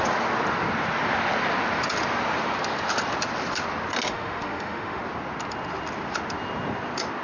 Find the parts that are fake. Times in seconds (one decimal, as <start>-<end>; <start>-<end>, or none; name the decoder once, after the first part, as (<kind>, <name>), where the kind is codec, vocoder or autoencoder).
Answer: 4.1-5.0 (autoencoder, DAC-VAE)